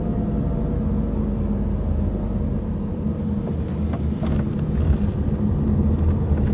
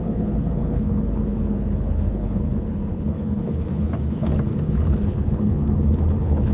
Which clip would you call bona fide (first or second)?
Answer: first